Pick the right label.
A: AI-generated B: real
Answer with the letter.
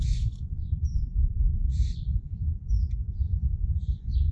A